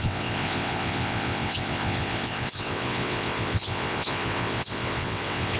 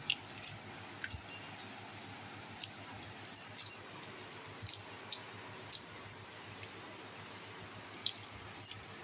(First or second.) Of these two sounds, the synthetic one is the first